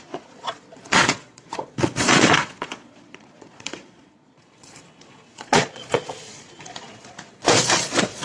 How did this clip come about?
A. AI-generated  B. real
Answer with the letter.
A